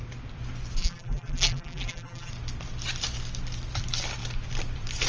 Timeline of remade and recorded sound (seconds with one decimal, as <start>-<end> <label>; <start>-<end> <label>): 0.0-0.8 recorded; 0.8-2.3 remade; 2.3-5.1 recorded